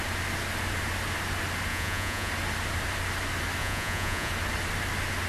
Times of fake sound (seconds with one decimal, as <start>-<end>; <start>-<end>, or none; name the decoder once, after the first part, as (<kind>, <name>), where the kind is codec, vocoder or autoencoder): 1.7-2.3 (vocoder, Vocos); 3.6-4.3